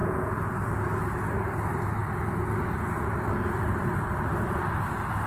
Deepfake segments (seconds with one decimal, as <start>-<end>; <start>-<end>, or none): 0.0-0.5